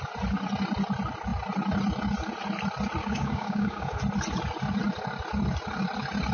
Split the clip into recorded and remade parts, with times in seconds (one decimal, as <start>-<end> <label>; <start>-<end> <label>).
0.0-3.0 recorded; 3.0-4.0 remade; 4.0-6.3 recorded